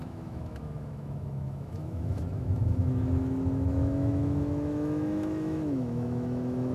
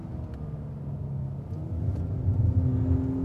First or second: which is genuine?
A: second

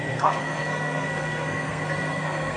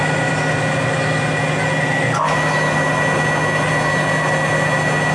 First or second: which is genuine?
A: second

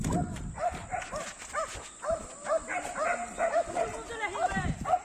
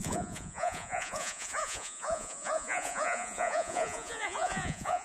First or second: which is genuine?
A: first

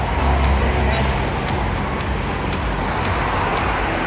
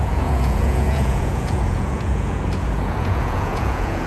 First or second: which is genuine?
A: first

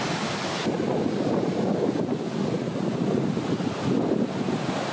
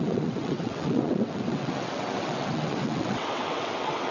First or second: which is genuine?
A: first